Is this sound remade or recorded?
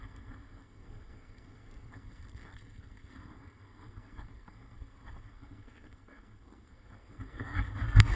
remade